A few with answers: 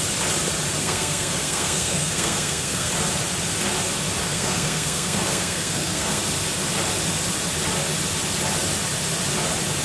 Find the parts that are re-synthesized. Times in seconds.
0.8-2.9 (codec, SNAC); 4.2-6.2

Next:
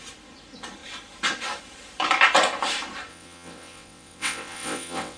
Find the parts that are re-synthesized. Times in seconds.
3.1-5.2 (vocoder, WaveNeXt)

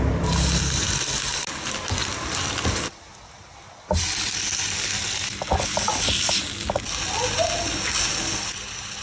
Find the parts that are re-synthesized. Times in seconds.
none

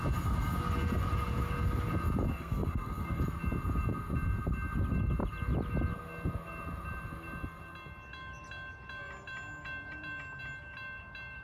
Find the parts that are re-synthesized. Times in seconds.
2.3-3.2 (codec, SNAC)

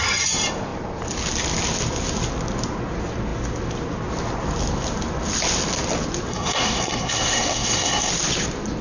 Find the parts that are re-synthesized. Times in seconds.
6.3-8.1 (codec, SNAC)

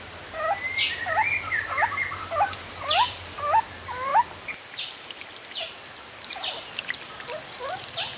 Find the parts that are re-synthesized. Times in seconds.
none

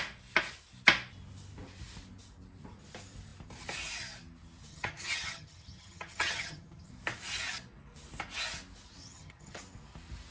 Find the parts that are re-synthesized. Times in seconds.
4.7-6.9 (vocoder, HiFi-GAN); 9.0-9.6